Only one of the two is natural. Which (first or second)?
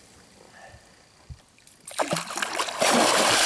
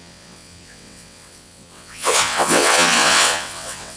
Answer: first